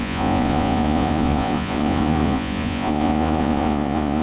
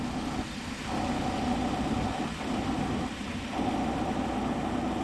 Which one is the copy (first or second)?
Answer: first